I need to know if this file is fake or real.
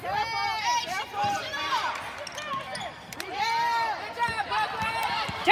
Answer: real